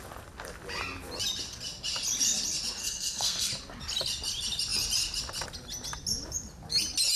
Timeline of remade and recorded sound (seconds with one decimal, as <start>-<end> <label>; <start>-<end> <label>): 0.0-2.8 recorded; 2.8-3.5 remade; 3.5-7.2 recorded